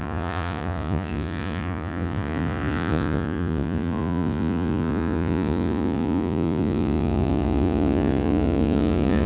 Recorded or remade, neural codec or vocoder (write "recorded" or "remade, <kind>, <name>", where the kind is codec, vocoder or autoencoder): remade, vocoder, Vocos